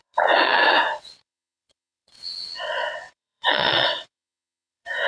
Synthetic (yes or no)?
yes